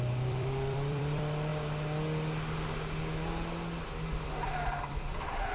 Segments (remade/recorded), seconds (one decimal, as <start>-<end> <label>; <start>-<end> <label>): 0.0-1.5 remade; 1.5-4.8 recorded; 4.8-5.5 remade